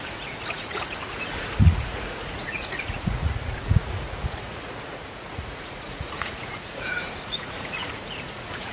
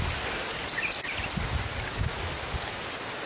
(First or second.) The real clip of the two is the second